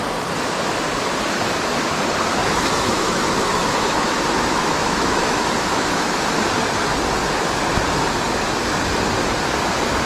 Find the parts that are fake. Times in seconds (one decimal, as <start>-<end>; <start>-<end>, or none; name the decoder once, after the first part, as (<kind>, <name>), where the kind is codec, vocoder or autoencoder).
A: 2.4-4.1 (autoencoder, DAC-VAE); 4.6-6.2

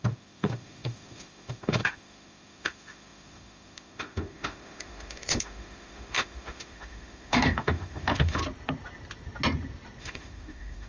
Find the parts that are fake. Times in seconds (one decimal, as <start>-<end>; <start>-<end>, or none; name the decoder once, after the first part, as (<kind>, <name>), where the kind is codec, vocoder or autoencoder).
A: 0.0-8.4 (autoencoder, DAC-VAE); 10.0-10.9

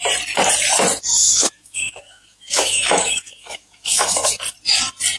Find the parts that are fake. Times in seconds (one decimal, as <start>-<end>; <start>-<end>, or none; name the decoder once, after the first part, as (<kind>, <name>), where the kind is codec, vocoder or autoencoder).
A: 1.2-4.3 (autoencoder, DAC-VAE)

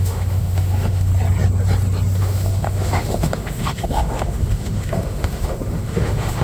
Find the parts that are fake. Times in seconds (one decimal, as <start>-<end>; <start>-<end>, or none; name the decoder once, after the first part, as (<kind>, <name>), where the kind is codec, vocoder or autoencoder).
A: 0.0-1.1 (autoencoder, DAC-VAE); 2.2-6.4